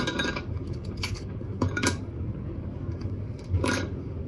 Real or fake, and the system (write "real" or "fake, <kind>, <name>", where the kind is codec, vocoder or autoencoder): fake, codec, DAC